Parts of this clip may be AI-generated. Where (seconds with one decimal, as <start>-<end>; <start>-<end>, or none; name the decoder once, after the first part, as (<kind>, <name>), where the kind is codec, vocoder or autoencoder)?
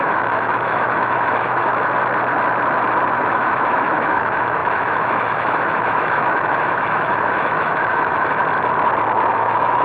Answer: 0.0-1.7 (autoencoder, DAC-VAE); 3.1-8.4; 9.3-9.8